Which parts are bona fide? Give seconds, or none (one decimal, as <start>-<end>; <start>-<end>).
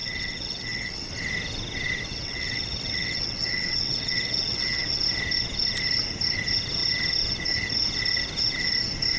1.1-2.1; 5.0-9.2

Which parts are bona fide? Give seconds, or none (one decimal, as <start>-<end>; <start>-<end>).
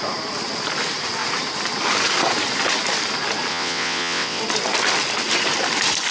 0.0-3.5; 4.4-6.1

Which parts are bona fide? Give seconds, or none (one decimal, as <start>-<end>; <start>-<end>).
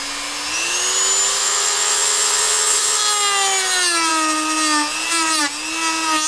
0.0-1.4; 3.0-6.3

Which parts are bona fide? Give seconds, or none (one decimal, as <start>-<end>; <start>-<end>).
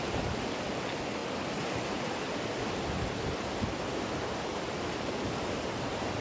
0.0-6.2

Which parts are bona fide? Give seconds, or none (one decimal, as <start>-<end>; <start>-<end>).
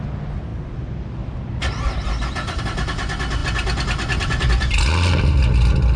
0.0-6.0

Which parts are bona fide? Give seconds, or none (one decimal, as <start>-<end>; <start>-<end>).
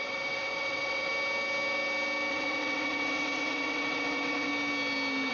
1.1-2.3; 4.5-5.3